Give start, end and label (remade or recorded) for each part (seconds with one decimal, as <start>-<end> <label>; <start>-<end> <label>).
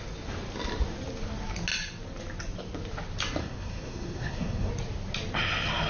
0.0-3.4 recorded; 3.4-4.7 remade; 4.7-5.9 recorded